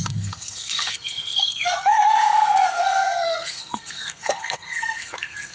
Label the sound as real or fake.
fake